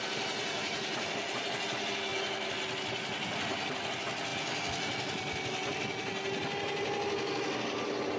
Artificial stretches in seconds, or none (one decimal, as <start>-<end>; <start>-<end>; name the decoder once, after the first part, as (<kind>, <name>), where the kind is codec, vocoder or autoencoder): none